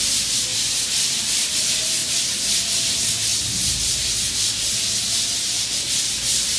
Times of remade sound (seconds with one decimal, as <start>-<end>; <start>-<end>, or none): 0.5-1.5